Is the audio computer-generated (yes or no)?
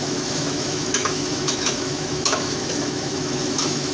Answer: yes